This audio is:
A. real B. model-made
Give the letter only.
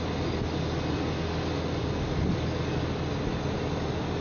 A